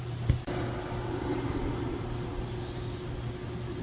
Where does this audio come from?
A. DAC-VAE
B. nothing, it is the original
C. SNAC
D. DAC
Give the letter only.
B